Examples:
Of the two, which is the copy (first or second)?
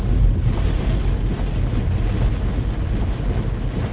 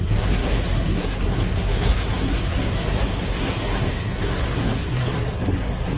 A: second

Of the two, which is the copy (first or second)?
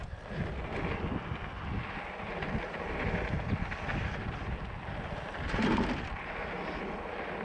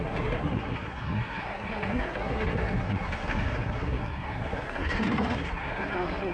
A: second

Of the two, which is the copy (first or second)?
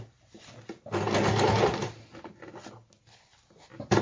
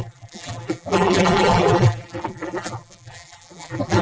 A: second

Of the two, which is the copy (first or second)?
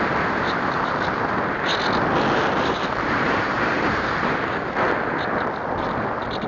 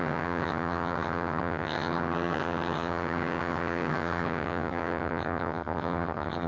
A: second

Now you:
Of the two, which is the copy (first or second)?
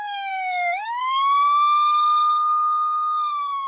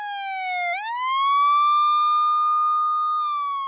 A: first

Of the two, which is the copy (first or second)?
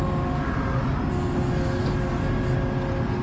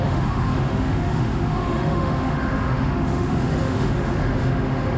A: second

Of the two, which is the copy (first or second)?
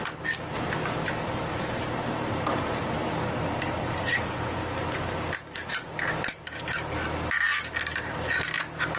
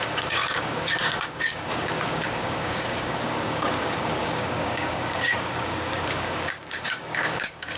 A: second